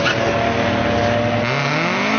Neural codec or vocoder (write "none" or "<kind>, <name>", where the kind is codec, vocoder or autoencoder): none